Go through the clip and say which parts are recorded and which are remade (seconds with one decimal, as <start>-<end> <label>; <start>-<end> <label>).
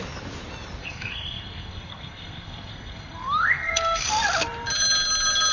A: 0.0-0.8 recorded; 0.8-4.1 remade; 4.1-5.5 recorded